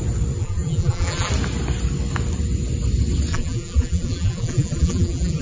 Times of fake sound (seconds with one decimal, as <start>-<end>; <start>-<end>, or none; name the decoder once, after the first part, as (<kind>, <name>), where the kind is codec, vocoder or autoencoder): 0.4-1.3 (vocoder, BigVGAN v2); 3.3-5.4